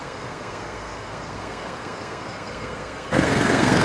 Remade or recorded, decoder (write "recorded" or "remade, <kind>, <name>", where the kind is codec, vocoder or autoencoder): remade, codec, SNAC